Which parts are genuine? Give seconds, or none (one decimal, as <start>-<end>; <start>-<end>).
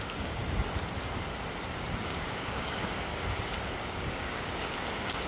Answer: 0.4-2.0; 3.1-3.8